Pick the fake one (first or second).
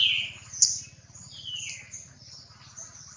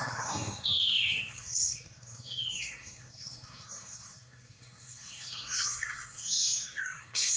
second